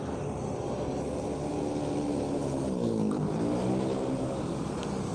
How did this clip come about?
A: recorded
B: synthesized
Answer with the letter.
A